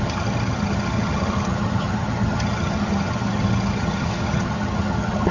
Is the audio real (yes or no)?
no